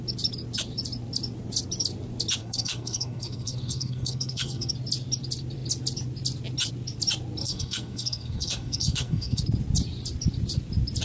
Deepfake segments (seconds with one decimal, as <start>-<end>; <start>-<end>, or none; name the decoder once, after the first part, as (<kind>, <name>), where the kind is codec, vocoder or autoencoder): 2.4-4.7 (codec, SNAC); 7.4-9.4